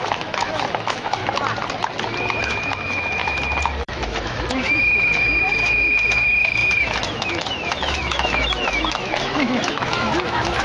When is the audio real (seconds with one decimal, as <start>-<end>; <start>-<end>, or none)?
1.2-2.4; 3.2-3.8